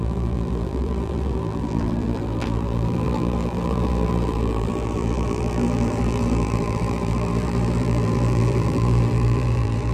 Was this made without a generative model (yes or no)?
no